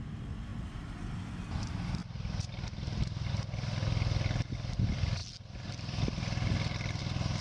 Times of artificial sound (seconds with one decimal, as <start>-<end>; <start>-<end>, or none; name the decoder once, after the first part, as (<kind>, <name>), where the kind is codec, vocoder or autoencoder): none